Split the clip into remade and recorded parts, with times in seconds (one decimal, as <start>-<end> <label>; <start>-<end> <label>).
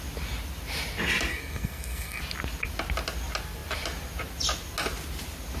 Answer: 0.0-1.3 recorded; 1.3-2.2 remade; 2.2-5.6 recorded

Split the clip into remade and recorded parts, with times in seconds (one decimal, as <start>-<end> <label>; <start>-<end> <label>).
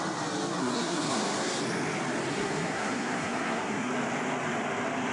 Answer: 0.0-0.6 recorded; 0.6-1.6 remade; 1.6-2.3 recorded; 2.3-3.9 remade; 3.9-5.1 recorded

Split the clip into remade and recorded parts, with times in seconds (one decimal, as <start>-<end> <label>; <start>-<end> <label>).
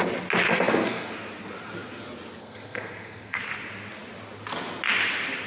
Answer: 0.0-0.5 recorded; 0.5-1.1 remade; 1.1-2.4 recorded; 2.4-3.4 remade; 3.4-5.5 recorded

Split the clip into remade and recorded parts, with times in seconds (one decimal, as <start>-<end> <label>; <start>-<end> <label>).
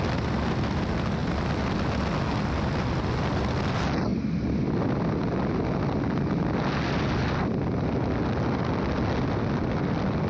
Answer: 0.0-10.3 recorded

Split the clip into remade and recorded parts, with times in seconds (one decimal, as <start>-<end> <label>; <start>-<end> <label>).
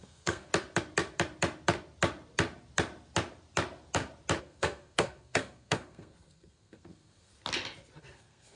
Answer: 0.0-0.5 remade; 0.5-4.4 recorded; 4.4-7.3 remade; 7.3-8.0 recorded; 8.0-8.6 remade